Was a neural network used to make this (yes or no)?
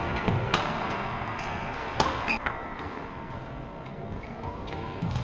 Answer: yes